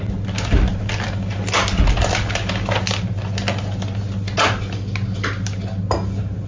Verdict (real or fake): real